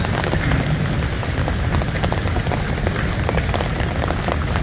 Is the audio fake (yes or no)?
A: no